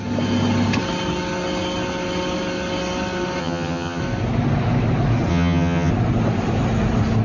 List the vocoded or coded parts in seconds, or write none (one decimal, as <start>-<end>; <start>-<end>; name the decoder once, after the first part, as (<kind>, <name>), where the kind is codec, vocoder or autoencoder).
3.4-4.0 (vocoder, HiFi-GAN); 5.3-5.9